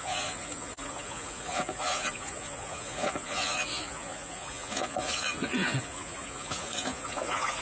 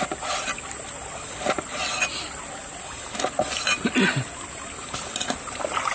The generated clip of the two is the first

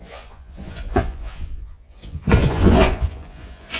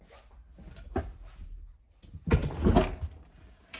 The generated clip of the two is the first